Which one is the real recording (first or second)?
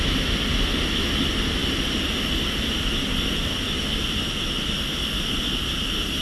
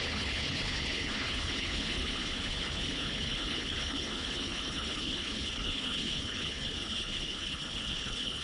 first